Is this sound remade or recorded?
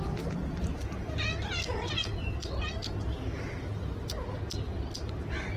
recorded